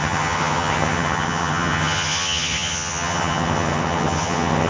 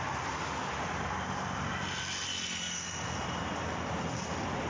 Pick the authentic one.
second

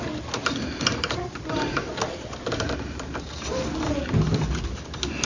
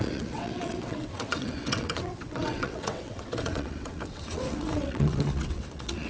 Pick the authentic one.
first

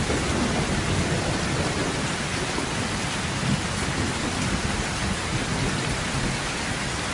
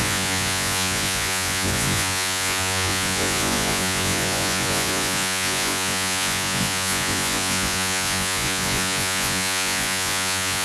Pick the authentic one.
first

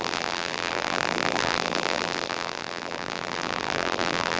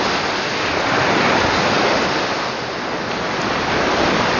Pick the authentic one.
second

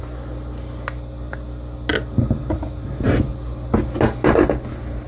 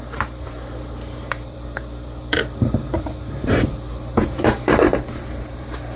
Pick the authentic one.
first